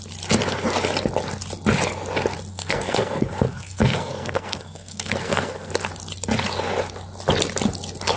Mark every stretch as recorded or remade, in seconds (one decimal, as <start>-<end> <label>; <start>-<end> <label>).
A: 0.0-2.5 recorded; 2.5-5.7 remade; 5.7-8.2 recorded